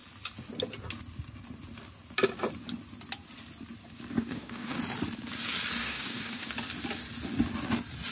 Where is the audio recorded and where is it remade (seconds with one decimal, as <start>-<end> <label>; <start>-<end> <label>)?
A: 0.0-4.2 recorded; 4.2-4.8 remade; 4.8-5.8 recorded; 5.8-6.5 remade; 6.5-8.1 recorded